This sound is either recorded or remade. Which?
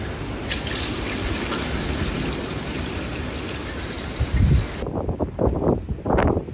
recorded